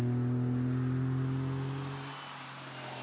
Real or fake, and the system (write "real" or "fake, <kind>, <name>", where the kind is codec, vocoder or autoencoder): real